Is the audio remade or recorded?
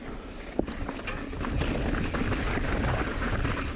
recorded